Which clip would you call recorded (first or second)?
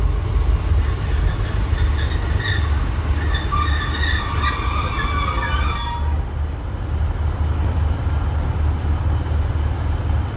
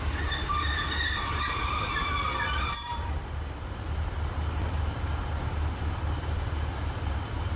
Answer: first